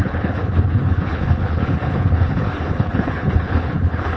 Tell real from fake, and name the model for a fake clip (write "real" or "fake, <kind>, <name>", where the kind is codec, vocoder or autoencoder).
fake, codec, HILCodec